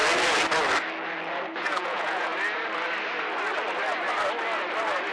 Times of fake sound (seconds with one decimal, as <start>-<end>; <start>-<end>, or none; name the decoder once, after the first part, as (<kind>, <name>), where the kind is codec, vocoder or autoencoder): 1.6-2.3 (vocoder, Vocos)

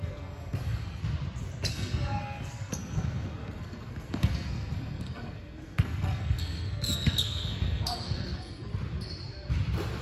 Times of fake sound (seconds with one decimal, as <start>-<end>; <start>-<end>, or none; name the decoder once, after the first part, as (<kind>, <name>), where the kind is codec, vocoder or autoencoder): 0.0-1.0 (codec, SNAC); 1.7-8.7

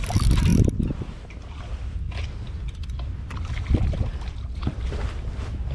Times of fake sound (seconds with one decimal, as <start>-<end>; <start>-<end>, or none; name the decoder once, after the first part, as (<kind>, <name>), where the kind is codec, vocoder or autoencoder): none

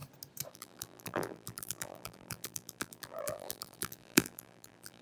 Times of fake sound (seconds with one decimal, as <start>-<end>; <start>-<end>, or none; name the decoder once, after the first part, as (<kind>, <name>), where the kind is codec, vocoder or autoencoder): 0.5-5.0 (vocoder, BigVGAN v2)

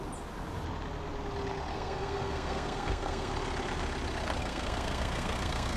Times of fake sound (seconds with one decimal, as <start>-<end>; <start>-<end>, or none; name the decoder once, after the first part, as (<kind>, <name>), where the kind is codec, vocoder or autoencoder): 1.7-3.3 (codec, SNAC); 4.4-5.8

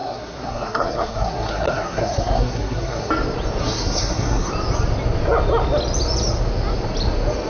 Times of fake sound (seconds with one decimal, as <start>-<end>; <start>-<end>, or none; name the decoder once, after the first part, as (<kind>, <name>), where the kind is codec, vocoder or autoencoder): 0.0-3.1 (codec, SNAC); 3.6-4.5

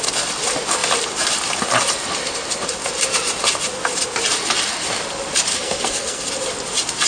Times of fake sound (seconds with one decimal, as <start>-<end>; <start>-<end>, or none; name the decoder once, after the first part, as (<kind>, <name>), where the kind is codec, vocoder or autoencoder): 5.5-6.3 (codec, SNAC)

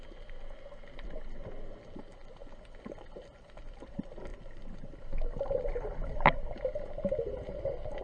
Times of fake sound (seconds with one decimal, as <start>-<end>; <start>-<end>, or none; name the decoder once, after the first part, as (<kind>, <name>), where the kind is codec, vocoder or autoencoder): 2.4-3.9 (vocoder, BigVGAN v2)